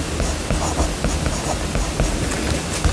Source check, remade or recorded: recorded